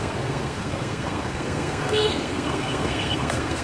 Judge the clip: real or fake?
fake